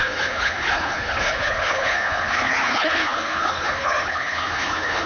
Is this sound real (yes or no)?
no